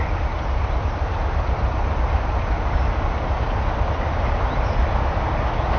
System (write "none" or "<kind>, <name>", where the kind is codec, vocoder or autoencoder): none